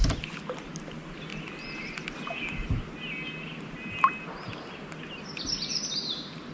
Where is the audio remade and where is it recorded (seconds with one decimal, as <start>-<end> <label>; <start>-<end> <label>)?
0.0-6.5 recorded